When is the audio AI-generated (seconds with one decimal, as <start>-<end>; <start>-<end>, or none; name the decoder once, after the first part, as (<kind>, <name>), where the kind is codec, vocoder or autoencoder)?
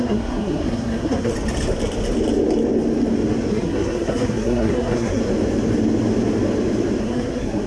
0.0-1.3 (codec, SNAC); 3.5-5.2; 7.0-7.7